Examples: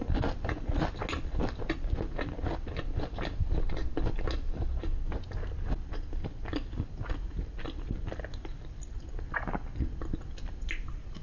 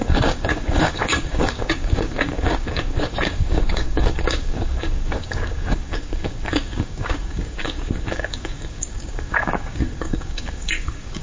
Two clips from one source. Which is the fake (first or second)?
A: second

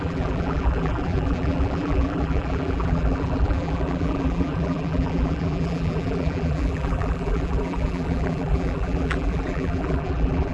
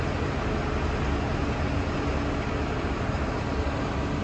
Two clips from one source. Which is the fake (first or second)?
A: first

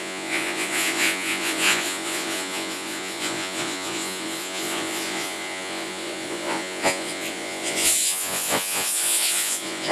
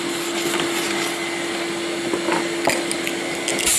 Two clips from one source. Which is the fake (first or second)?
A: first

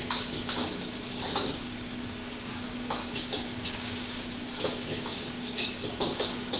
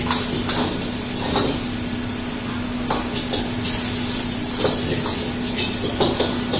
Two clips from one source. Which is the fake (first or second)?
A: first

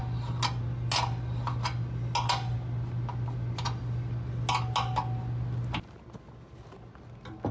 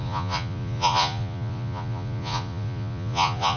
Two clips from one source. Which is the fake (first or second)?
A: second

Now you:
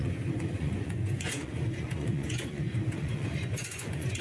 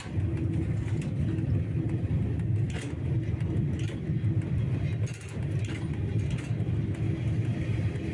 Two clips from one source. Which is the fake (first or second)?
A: first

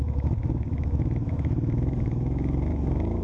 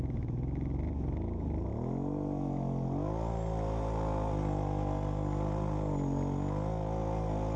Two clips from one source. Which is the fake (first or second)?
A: first